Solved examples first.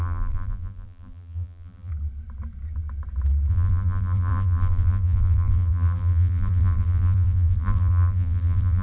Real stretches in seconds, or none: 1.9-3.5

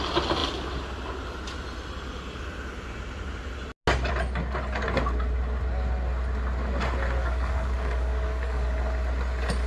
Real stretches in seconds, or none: 0.0-7.2; 8.8-9.7

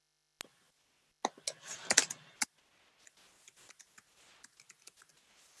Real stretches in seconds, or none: 0.0-5.6

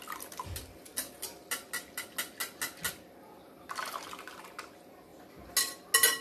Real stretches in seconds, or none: 0.0-6.2